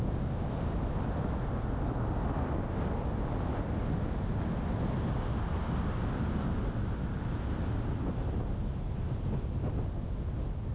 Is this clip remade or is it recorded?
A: recorded